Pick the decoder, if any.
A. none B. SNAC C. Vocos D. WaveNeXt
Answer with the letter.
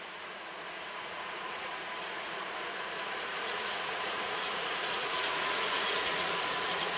C